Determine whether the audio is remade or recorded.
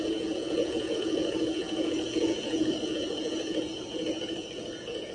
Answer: remade